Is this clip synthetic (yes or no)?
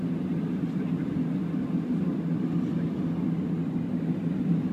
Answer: no